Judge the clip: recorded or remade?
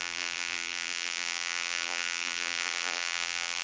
remade